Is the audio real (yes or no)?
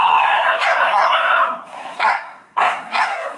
no